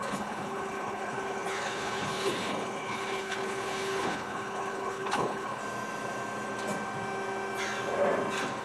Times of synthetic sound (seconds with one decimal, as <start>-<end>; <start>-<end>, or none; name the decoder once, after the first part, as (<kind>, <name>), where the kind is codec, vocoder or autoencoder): 0.0-5.6 (codec, HILCodec)

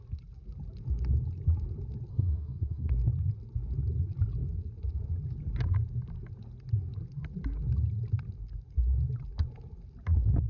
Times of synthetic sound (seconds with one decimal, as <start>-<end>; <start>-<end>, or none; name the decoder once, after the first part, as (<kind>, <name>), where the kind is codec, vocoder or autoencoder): 2.1-2.9 (codec, SNAC)

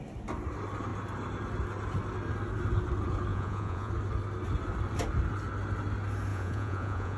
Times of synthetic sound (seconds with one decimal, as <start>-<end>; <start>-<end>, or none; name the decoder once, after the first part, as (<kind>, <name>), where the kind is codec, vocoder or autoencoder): 3.3-3.9 (vocoder, Vocos); 6.3-7.2

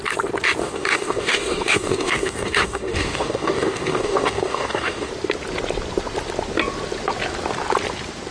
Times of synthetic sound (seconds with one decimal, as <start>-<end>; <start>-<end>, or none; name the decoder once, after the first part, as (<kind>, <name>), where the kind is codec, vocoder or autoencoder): 0.6-5.1 (codec, DAC)

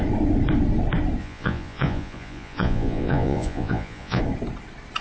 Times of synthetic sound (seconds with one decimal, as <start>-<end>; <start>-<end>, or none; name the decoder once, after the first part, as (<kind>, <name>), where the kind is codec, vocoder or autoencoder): 1.2-4.2 (vocoder, Vocos)